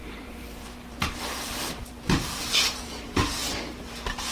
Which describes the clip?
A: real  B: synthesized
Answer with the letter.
B